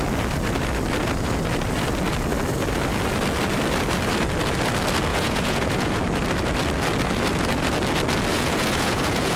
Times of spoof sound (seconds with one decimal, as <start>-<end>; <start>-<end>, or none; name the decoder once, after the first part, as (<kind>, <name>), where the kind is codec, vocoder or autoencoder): 5.1-6.0 (vocoder, Vocos); 8.3-9.4